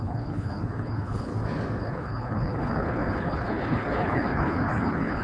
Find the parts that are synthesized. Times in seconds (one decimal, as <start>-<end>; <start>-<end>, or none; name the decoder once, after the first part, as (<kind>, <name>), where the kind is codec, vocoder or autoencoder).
0.0-1.3 (codec, HILCodec); 1.9-5.2